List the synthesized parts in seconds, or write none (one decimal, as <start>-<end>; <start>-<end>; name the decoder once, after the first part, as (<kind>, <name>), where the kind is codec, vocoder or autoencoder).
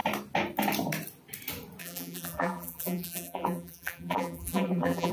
1.8-5.1 (vocoder, BigVGAN v2)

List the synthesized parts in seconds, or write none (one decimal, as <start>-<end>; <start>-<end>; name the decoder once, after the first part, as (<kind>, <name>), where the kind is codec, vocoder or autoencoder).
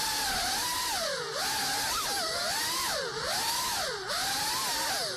none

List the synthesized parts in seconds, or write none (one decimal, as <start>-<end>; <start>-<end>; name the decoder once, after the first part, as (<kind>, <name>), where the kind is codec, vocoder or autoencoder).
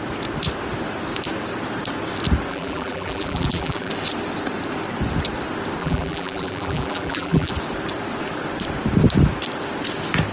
2.5-3.9 (vocoder, BigVGAN v2); 5.8-7.5